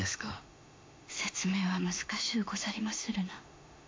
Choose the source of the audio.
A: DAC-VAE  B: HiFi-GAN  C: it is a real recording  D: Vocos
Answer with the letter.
A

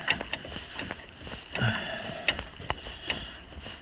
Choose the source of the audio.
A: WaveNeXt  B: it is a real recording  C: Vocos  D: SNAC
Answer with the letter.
B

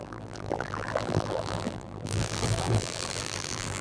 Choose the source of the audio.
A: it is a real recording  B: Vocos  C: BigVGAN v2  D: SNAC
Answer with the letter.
C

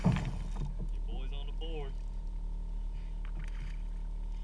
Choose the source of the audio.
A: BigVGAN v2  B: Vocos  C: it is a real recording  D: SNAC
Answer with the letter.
C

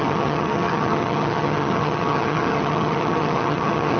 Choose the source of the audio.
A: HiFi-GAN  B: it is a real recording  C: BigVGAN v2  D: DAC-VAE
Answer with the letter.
A